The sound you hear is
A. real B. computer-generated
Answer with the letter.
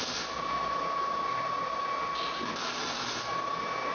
A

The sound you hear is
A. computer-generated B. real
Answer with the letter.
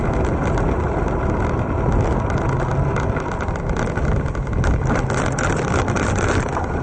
B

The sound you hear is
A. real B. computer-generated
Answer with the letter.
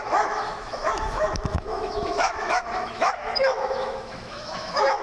B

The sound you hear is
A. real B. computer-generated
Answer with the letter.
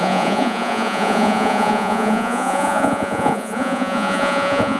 B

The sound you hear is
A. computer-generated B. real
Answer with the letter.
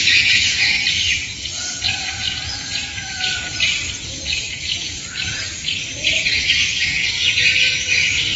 A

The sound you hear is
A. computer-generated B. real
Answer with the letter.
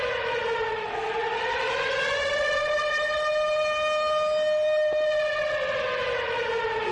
B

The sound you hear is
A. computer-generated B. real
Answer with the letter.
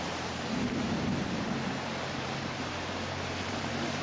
A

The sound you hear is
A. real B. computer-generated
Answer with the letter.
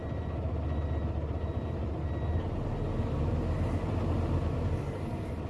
A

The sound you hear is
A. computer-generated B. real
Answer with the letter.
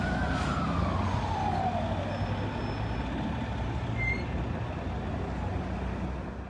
B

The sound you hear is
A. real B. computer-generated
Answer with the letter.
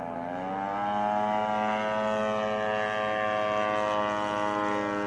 A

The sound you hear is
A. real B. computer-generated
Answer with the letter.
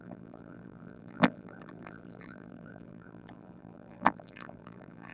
B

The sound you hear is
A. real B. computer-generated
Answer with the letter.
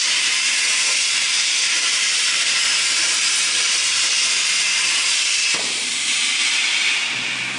B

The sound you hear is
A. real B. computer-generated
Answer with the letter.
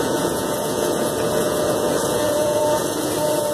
B